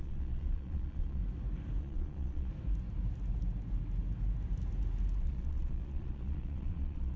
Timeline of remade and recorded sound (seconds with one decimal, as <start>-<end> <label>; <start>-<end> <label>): 0.0-1.2 remade; 1.2-1.8 recorded; 1.8-2.5 remade; 2.5-5.2 recorded; 5.2-7.2 remade